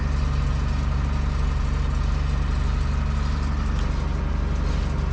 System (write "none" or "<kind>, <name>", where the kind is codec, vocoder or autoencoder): none